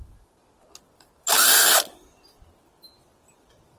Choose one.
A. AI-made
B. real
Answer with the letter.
B